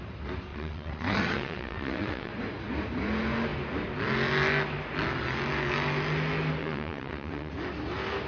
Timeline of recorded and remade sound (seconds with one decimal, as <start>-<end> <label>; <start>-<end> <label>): 0.0-0.5 recorded; 0.5-2.3 remade; 2.3-6.6 recorded; 6.6-7.5 remade; 7.5-8.3 recorded